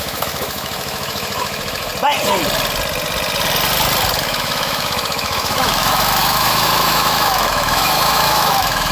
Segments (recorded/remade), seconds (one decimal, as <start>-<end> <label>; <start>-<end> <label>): 0.0-1.9 remade; 1.9-4.2 recorded; 4.2-8.9 remade